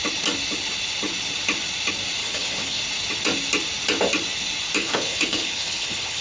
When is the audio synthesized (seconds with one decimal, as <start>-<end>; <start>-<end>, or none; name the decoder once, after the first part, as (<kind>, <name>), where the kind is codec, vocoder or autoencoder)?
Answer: 2.2-2.8 (codec, HILCodec); 4.8-6.2